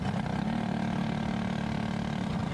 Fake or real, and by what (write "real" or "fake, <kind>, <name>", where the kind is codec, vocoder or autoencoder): real